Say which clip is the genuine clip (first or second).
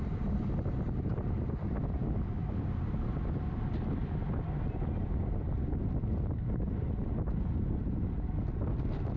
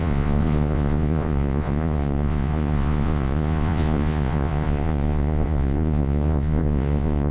first